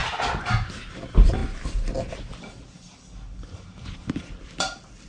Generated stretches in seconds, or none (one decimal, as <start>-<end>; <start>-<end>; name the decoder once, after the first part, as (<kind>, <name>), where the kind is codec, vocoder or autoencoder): 0.9-1.4 (vocoder, BigVGAN v2); 4.1-5.1